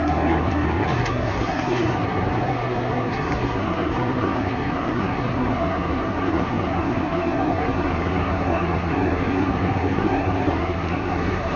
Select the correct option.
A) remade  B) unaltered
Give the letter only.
A